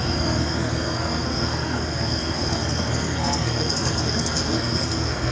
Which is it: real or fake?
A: fake